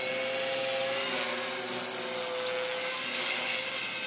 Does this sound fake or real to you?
real